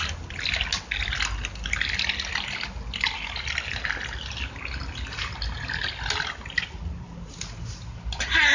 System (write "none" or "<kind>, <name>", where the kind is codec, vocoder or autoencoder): none